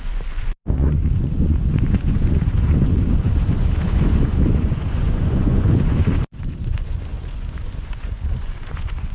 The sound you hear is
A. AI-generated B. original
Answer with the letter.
A